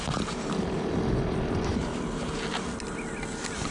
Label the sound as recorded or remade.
recorded